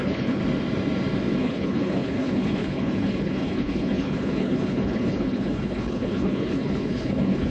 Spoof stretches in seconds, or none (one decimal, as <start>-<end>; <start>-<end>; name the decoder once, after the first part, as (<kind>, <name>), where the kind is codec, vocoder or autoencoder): 0.0-0.4 (codec, HILCodec); 1.4-7.5